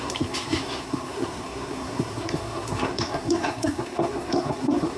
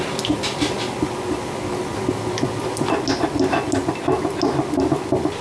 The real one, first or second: second